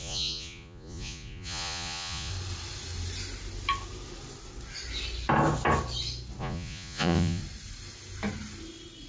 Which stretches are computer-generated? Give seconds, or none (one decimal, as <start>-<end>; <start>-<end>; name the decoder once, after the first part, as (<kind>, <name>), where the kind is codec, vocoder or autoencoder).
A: 0.0-2.3 (vocoder, Vocos); 6.4-7.4